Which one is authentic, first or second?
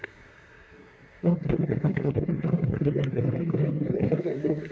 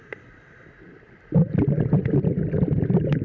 second